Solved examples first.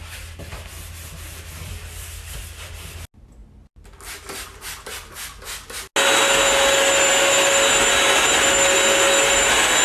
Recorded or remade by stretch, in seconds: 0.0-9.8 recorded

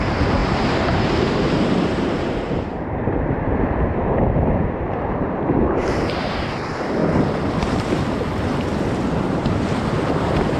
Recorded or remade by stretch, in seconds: 0.0-7.0 remade; 7.0-7.6 recorded; 7.6-8.7 remade; 8.7-9.8 recorded; 9.8-10.6 remade

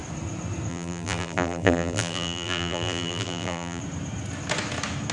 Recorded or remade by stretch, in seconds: 0.0-0.7 recorded; 0.7-3.8 remade; 3.8-5.1 recorded

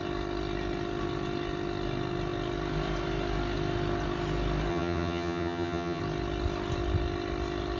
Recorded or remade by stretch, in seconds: 0.0-4.7 recorded; 4.7-6.0 remade; 6.0-7.8 recorded

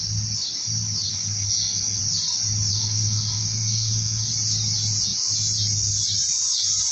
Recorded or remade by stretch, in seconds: 0.0-1.1 recorded; 1.1-2.0 remade; 2.0-2.7 recorded; 2.7-4.3 remade; 4.3-6.9 recorded

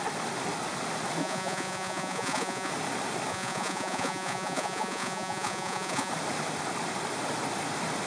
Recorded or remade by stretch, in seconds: 0.0-1.2 recorded; 1.2-2.7 remade; 2.7-3.3 recorded; 3.3-6.1 remade; 6.1-8.1 recorded

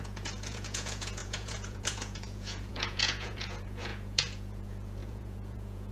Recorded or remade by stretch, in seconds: 0.0-5.9 remade